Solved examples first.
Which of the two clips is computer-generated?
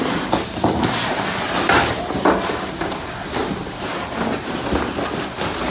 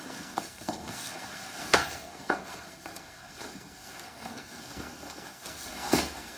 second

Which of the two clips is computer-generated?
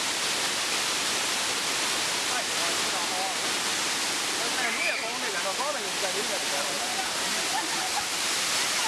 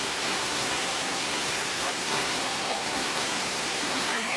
second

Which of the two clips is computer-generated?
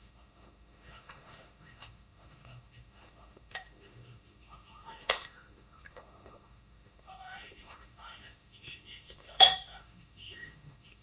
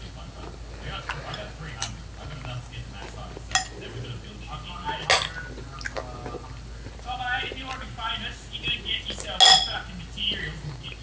first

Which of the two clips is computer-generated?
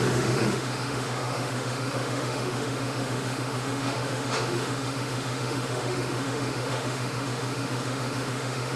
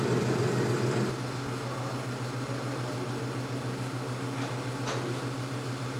first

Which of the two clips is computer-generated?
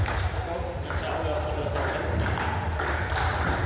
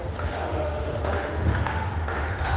second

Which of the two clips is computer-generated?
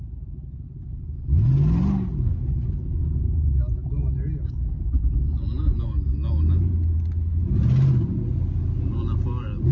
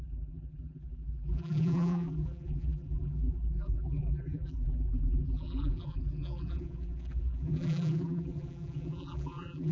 second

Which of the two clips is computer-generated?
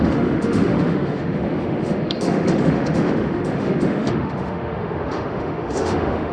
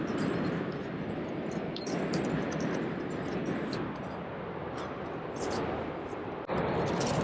first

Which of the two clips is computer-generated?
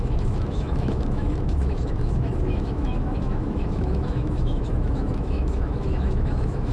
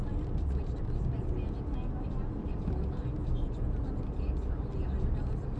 first